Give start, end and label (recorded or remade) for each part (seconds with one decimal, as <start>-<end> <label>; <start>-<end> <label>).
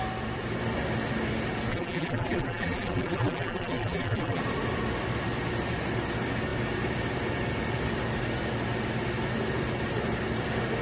0.0-1.7 recorded; 1.7-4.4 remade; 4.4-10.8 recorded